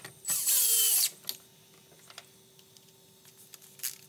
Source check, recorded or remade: recorded